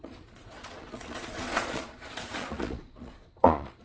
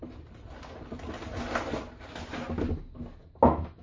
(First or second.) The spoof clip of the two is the first